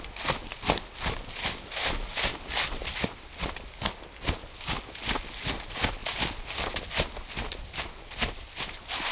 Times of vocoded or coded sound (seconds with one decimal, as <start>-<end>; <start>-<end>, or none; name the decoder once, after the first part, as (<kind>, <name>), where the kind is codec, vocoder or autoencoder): none